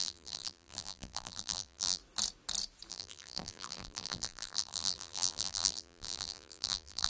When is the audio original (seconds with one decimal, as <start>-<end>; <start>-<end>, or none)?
2.0-2.9